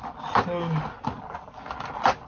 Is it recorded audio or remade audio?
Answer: recorded